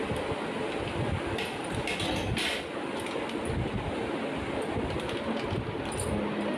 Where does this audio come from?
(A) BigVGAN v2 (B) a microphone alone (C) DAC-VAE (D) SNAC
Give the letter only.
B